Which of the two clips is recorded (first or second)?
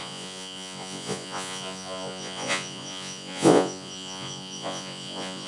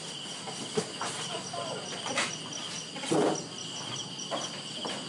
second